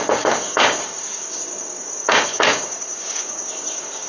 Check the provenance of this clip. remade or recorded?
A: remade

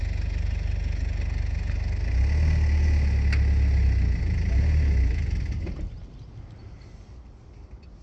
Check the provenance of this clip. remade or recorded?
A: recorded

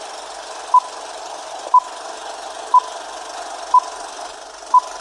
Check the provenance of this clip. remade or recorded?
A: recorded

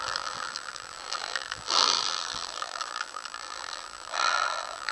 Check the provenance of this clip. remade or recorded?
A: remade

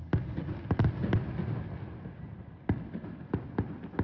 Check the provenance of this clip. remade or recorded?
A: recorded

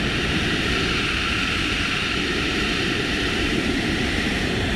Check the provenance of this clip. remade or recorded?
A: remade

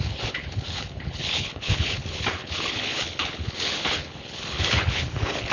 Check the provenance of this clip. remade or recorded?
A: remade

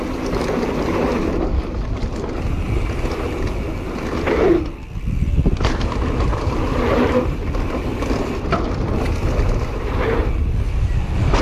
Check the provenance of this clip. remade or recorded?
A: recorded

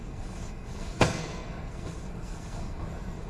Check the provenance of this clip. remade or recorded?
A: remade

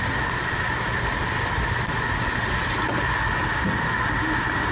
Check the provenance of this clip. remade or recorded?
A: recorded